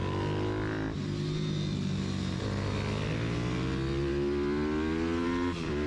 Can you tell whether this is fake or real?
real